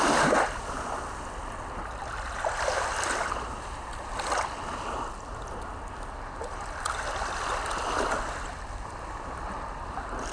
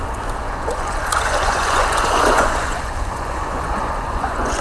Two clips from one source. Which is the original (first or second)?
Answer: first